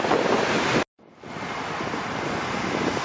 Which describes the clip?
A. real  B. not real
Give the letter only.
A